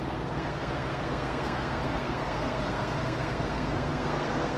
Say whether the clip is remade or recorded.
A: remade